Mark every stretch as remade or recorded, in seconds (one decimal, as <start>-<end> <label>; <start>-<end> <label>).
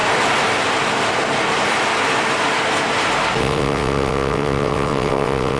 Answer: 0.0-3.4 recorded; 3.4-5.6 remade